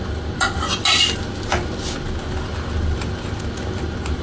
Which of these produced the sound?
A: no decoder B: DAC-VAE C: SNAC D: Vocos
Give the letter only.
A